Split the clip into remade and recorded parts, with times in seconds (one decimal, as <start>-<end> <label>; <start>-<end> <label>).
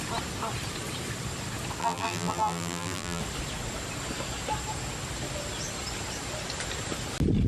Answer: 0.0-1.8 recorded; 1.8-3.2 remade; 3.2-7.5 recorded